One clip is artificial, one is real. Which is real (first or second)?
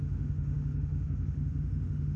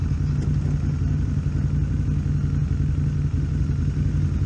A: second